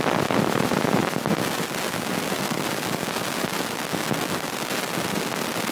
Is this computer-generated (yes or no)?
no